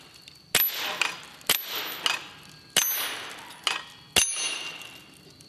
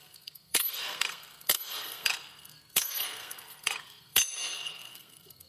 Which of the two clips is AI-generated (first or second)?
second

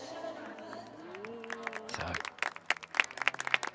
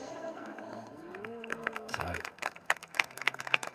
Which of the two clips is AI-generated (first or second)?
second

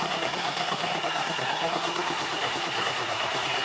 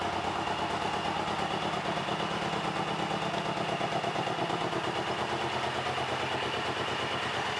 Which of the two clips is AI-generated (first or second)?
first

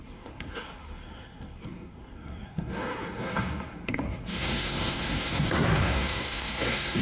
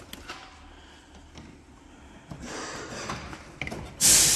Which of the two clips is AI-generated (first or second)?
first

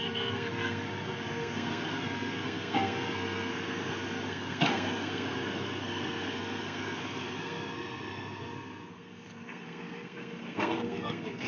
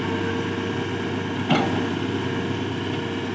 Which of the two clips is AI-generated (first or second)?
first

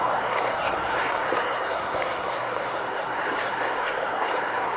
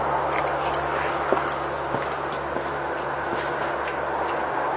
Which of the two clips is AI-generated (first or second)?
first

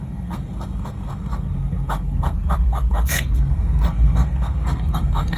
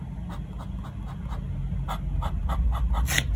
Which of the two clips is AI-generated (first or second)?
first